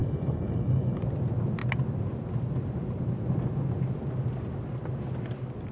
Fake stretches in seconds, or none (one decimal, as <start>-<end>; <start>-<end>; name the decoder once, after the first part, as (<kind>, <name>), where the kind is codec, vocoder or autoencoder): 0.0-1.0 (codec, HILCodec)